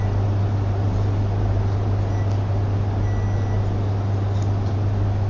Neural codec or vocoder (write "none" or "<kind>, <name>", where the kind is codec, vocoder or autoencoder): none